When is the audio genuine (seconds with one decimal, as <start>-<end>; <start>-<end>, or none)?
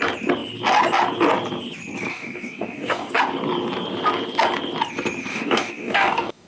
0.0-2.1; 3.1-5.3